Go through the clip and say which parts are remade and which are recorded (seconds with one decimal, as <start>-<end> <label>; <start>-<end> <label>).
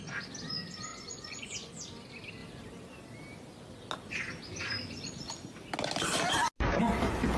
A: 0.0-0.9 recorded; 0.9-1.7 remade; 1.7-7.4 recorded